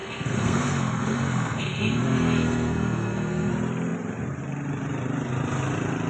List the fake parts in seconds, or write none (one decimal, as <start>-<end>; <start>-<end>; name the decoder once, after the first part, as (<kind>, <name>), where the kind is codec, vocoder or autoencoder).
0.0-3.5 (codec, SNAC)